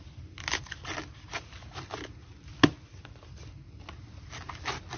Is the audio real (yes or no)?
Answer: yes